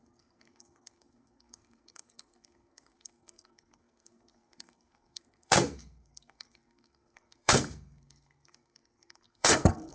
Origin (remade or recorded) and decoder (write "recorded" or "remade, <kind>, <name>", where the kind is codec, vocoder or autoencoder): remade, codec, SNAC